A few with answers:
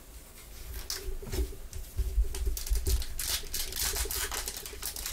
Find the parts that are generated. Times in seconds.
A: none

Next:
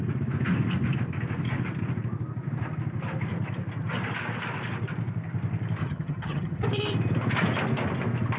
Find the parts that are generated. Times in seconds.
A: 5.8-6.6 (vocoder, HiFi-GAN)

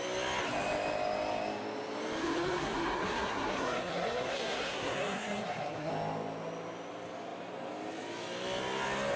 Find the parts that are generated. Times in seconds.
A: 2.2-5.9 (codec, SNAC)

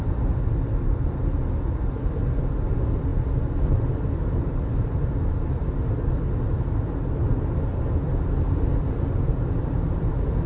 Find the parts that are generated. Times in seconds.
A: none

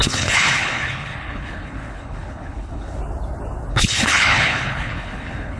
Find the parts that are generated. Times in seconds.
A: 0.0-3.0 (codec, HILCodec); 3.7-5.6

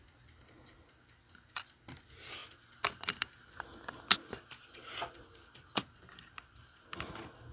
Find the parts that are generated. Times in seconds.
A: none

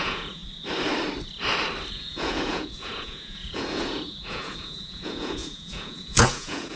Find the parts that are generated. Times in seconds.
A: 0.0-0.4 (vocoder, Vocos); 1.9-6.8

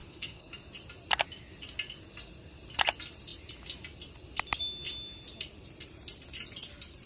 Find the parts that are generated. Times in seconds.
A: 0.0-0.5 (codec, HILCodec)